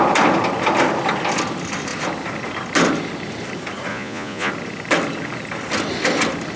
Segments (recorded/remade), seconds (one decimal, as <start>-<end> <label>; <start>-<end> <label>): 0.0-3.9 recorded; 3.9-4.5 remade; 4.5-6.6 recorded